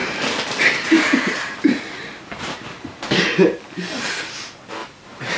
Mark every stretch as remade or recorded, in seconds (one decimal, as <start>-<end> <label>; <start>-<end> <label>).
0.0-3.0 remade; 3.0-4.8 recorded; 4.8-5.4 remade